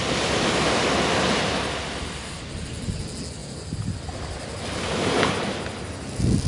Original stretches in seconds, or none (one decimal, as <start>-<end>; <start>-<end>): 0.0-6.5